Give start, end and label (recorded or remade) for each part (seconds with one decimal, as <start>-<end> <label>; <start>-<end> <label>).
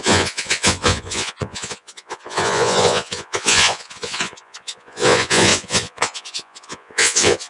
0.0-7.5 remade